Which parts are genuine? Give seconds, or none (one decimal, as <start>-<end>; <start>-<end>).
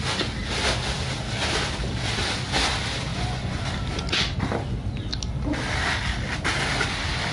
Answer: 0.0-3.1; 3.6-7.3